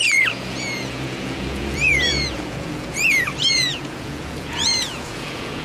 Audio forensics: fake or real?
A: fake